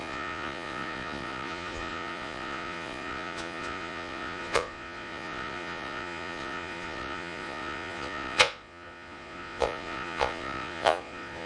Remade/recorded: remade